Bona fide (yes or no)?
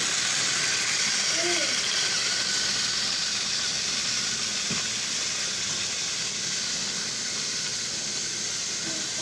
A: yes